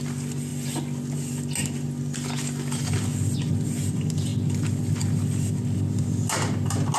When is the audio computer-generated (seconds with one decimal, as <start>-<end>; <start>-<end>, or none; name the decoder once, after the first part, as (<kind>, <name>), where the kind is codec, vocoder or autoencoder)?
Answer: none